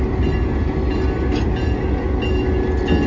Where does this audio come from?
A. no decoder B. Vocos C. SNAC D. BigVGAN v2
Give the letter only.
A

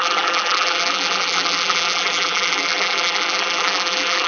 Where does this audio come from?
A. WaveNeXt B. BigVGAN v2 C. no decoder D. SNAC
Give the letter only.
B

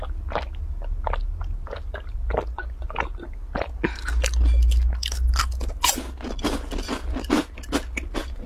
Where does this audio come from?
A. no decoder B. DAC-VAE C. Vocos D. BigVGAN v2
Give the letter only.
A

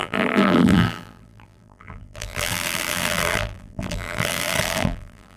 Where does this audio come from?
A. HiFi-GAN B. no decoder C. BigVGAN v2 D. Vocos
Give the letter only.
C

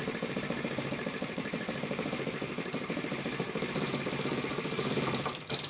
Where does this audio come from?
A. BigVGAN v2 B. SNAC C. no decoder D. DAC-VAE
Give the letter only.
A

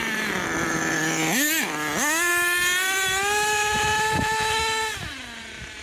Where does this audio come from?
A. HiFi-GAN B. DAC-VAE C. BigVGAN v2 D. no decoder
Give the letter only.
D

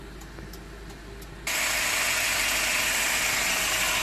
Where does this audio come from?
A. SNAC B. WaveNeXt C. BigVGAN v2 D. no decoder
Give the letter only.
D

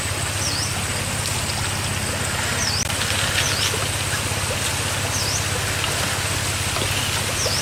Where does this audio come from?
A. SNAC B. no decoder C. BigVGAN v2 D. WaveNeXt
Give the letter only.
B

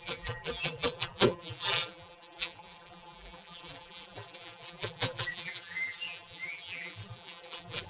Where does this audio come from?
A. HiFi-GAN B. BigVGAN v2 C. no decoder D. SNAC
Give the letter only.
B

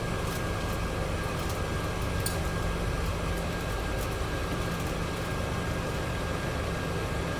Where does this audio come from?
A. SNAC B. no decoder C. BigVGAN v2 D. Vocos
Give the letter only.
B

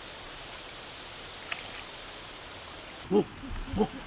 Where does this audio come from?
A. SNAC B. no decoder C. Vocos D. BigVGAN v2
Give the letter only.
B